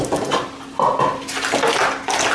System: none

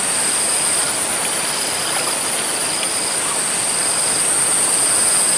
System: none